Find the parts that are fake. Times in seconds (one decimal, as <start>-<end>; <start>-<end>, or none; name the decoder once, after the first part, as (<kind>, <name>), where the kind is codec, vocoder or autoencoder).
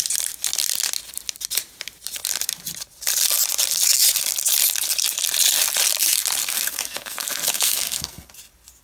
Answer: 6.4-8.3 (codec, SNAC)